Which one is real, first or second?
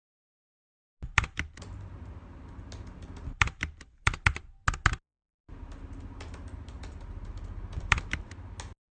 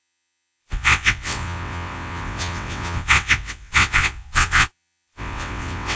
first